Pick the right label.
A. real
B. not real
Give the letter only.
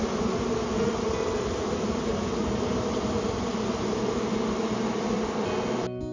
A